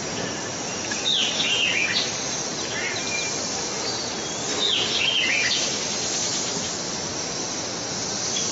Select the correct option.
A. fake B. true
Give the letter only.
B